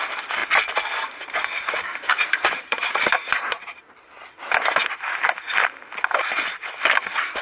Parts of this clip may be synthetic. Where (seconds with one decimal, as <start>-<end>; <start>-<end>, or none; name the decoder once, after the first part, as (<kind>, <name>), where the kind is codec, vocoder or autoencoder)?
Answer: 0.4-4.2 (vocoder, BigVGAN v2)